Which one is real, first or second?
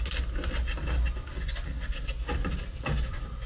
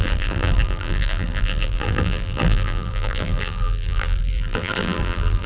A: first